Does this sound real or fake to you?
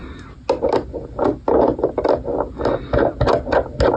real